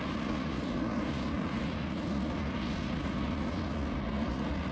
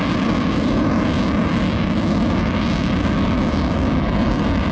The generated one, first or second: first